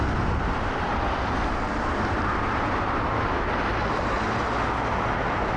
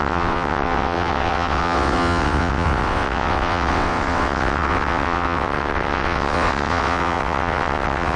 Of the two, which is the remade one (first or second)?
second